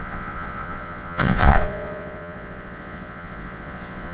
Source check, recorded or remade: remade